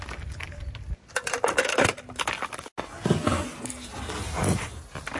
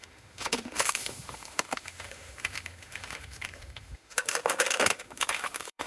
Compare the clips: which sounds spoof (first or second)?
second